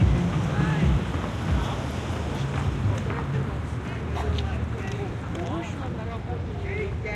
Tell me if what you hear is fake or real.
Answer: real